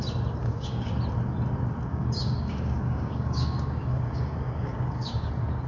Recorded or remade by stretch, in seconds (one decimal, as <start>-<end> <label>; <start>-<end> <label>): 0.0-0.4 recorded; 0.4-0.9 remade; 0.9-1.9 recorded; 1.9-5.3 remade; 5.3-5.7 recorded